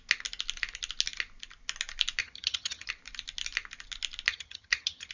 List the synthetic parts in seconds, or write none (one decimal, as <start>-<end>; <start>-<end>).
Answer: 2.2-2.9; 4.3-5.1